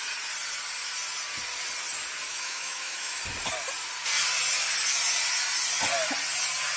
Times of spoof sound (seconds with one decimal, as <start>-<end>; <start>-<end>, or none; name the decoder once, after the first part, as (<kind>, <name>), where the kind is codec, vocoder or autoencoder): 2.3-3.2 (autoencoder, DAC-VAE)